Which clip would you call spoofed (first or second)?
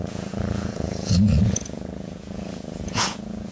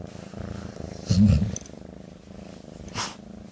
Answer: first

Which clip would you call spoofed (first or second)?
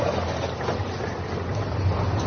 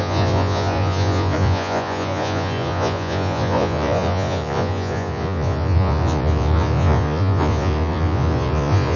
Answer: second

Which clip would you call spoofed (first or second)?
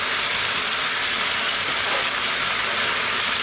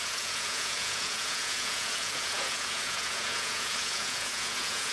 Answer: second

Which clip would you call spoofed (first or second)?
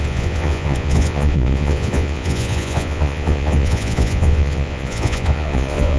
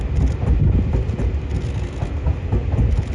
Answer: first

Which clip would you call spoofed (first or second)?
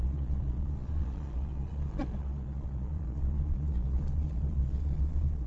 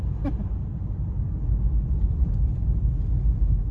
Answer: first